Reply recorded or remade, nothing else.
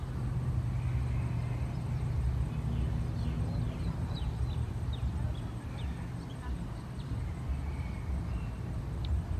recorded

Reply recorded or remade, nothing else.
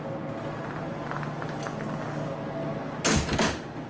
recorded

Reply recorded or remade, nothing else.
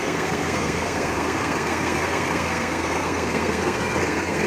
remade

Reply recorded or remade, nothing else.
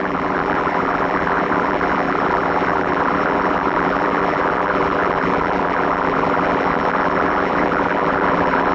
remade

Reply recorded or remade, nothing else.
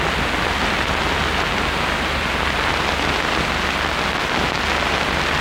recorded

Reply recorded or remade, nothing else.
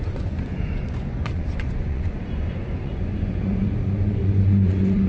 remade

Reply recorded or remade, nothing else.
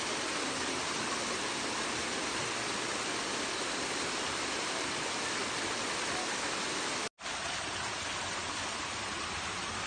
recorded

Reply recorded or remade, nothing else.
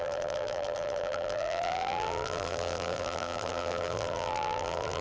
remade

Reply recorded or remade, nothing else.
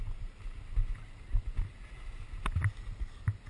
recorded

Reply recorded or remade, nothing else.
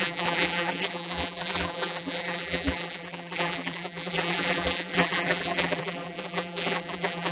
remade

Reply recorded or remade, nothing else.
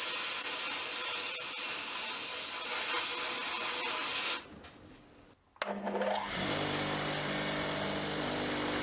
recorded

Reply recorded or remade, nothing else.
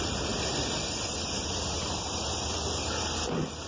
remade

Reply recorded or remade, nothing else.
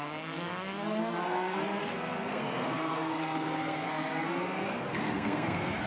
remade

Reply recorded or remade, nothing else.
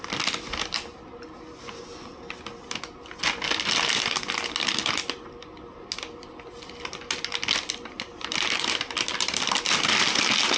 recorded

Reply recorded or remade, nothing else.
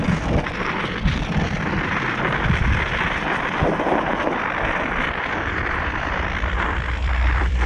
remade